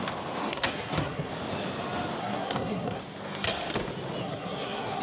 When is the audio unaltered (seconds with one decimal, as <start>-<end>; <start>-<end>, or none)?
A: 0.0-0.4; 1.3-2.2; 3.0-4.2